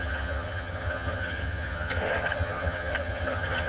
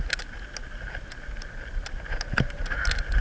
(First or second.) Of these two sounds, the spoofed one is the first